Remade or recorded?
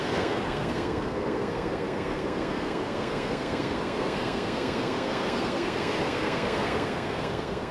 remade